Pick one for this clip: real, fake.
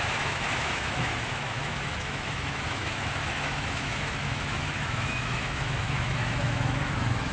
fake